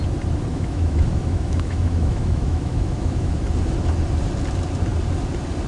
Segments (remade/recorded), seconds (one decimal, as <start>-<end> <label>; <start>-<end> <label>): 0.0-0.5 recorded; 0.5-3.4 remade; 3.4-5.7 recorded